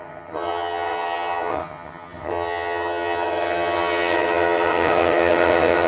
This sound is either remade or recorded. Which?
remade